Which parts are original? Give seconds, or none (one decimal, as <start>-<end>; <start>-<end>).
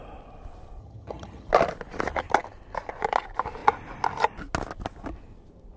0.0-0.8; 1.5-5.8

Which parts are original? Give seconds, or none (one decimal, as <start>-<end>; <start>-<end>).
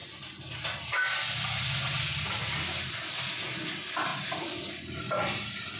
0.0-5.8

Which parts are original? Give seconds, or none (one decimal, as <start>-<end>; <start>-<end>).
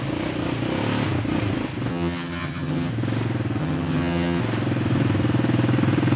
0.0-1.9; 2.9-3.6; 4.4-6.2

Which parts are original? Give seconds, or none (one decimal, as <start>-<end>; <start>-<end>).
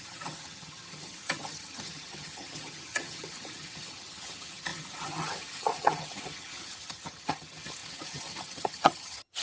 none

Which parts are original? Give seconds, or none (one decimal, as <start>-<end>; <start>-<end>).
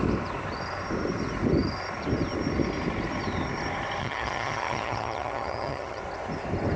0.0-4.0; 6.0-6.8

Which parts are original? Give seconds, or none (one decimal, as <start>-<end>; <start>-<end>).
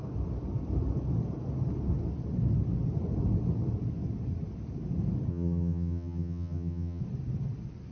0.0-5.3; 7.0-7.9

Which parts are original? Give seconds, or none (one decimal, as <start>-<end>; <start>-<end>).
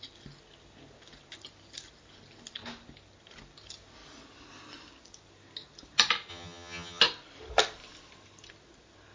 0.0-6.3; 7.0-9.1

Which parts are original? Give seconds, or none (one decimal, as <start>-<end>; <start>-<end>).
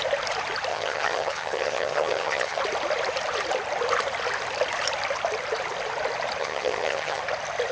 0.0-0.7; 2.6-6.4; 7.2-7.7